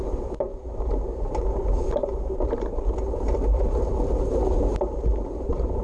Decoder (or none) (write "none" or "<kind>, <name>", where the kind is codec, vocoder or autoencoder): vocoder, BigVGAN v2